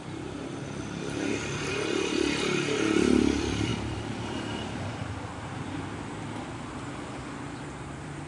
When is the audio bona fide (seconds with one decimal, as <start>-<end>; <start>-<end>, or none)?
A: none